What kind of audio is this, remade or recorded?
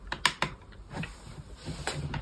recorded